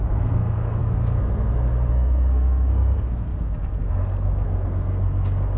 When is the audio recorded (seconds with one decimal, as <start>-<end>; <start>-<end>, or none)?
none